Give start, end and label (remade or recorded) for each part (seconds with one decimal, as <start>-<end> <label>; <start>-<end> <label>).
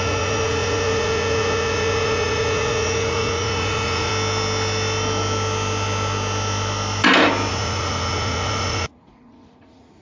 0.0-4.1 remade; 4.1-7.5 recorded; 7.5-10.0 remade